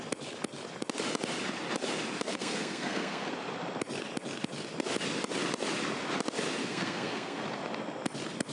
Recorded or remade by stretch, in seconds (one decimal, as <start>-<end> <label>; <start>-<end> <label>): 0.0-2.3 recorded; 2.3-3.3 remade; 3.3-6.6 recorded; 6.6-7.4 remade; 7.4-8.5 recorded